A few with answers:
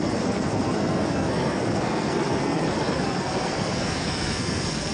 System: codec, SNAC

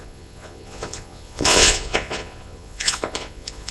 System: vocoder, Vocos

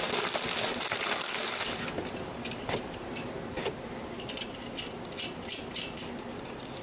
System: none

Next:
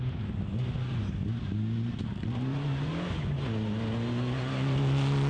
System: none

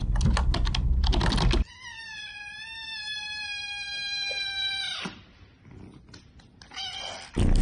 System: none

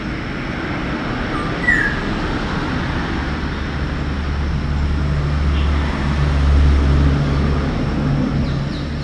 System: none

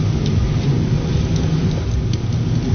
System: none